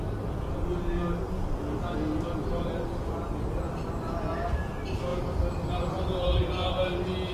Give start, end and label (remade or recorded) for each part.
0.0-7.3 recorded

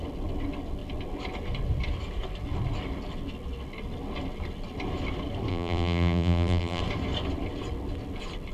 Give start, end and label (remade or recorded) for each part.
0.0-5.5 recorded; 5.5-6.8 remade; 6.8-8.5 recorded

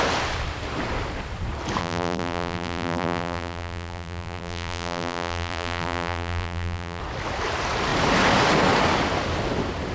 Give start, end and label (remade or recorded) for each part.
0.0-1.8 recorded; 1.8-7.0 remade; 7.0-9.9 recorded

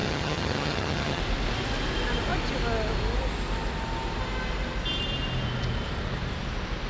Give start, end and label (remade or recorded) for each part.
0.0-1.2 remade; 1.2-6.9 recorded

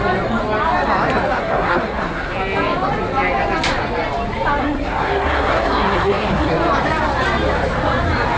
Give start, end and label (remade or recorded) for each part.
0.0-1.4 recorded; 1.4-2.3 remade; 2.3-4.6 recorded; 4.6-6.5 remade; 6.5-8.4 recorded

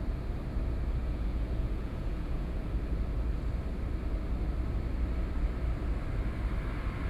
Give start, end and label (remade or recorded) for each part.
0.0-1.0 recorded; 1.0-2.7 remade; 2.7-7.1 recorded